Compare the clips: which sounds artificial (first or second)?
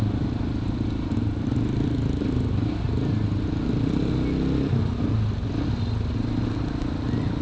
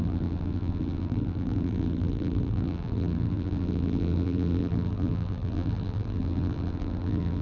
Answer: second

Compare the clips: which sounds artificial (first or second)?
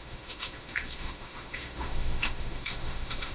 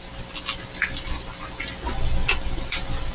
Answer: first